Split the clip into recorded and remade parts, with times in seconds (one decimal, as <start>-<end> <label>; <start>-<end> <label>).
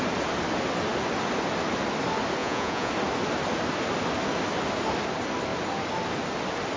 0.0-2.4 recorded; 2.4-2.9 remade; 2.9-6.8 recorded